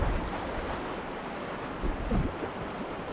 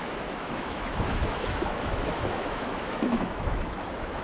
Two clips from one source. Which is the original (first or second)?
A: first